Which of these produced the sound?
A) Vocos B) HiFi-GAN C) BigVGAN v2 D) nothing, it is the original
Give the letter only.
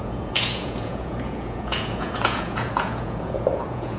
A